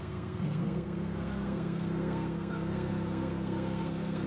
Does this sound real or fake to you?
fake